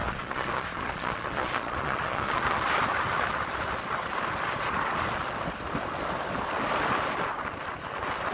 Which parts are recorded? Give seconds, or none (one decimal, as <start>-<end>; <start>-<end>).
2.7-8.3